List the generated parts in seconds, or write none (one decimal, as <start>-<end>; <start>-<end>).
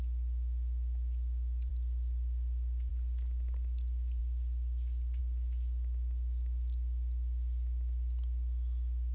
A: none